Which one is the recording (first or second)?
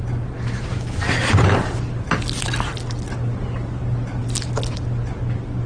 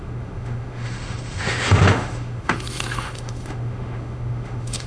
first